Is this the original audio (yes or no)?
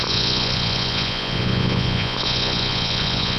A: no